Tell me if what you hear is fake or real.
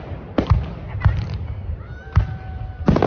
real